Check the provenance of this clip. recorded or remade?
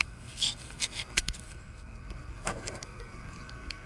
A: remade